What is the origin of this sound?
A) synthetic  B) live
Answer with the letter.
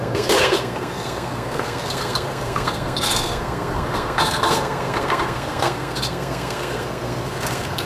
A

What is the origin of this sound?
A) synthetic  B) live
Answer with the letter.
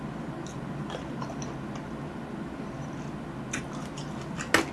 B